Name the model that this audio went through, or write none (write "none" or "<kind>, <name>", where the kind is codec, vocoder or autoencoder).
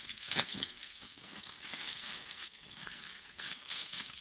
codec, SNAC